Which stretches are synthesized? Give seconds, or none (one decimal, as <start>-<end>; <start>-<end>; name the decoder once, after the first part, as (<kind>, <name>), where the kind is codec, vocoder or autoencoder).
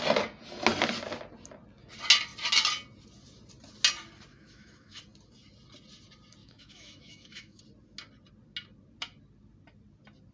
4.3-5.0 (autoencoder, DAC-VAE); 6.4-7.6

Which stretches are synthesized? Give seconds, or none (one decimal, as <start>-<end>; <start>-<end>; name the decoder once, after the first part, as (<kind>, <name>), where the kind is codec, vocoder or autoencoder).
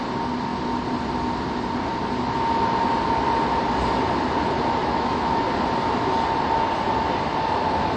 4.8-5.4 (autoencoder, DAC-VAE)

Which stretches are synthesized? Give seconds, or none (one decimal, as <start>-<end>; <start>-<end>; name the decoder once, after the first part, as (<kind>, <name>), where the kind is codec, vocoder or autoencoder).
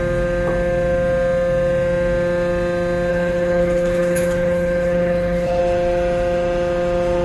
3.1-5.6 (codec, HILCodec)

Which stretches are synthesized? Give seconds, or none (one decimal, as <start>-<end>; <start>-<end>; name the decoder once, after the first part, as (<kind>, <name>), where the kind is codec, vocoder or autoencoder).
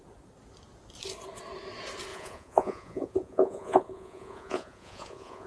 2.1-5.5 (vocoder, Vocos)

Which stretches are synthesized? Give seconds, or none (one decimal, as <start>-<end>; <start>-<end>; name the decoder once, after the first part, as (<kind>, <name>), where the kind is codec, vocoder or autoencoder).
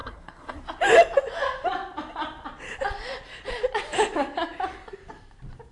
0.0-0.6 (codec, SNAC)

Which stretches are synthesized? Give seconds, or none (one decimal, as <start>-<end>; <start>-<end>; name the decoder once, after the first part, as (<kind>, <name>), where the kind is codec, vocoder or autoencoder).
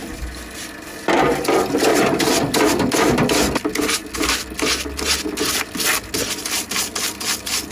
1.9-2.4 (vocoder, BigVGAN v2)